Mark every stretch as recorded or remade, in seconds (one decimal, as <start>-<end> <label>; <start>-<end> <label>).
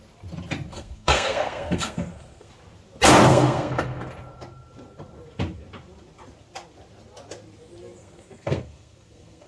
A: 0.0-0.7 recorded; 0.7-2.5 remade; 2.5-3.3 recorded; 3.3-4.0 remade; 4.0-8.0 recorded; 8.0-9.5 remade